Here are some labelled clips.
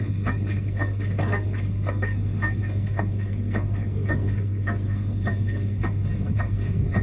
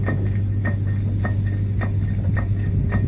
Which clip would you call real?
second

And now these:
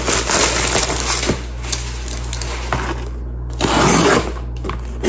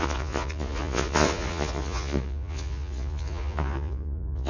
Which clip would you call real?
first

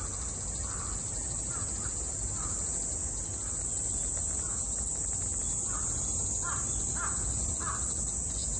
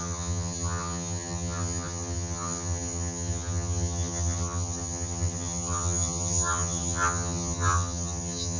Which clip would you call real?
first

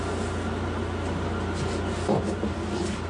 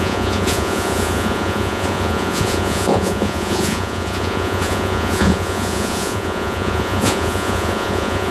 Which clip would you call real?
first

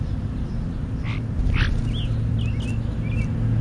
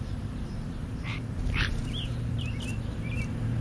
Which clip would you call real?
first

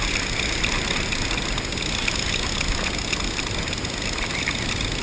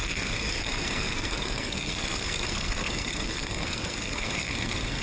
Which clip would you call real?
first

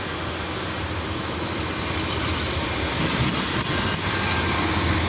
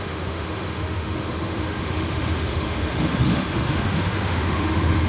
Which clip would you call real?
first